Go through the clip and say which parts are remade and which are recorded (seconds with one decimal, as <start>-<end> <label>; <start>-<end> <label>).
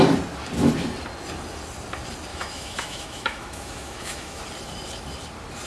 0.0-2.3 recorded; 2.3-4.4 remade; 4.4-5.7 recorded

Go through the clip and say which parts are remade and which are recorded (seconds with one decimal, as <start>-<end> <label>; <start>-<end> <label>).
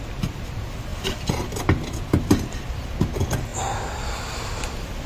0.0-5.1 recorded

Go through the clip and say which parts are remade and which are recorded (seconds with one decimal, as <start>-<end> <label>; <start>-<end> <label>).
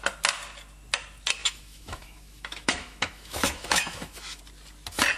0.0-1.4 recorded; 1.4-4.4 remade; 4.4-5.2 recorded